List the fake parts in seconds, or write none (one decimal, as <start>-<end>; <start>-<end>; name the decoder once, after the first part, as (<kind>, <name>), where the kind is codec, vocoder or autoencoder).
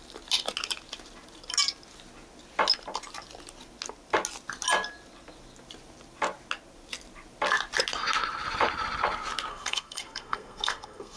9.5-11.2 (codec, SNAC)